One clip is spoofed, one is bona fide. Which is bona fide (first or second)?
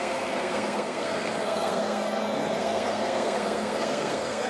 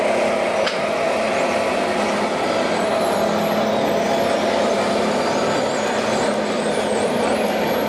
second